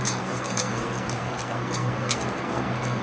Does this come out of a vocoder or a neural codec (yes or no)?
yes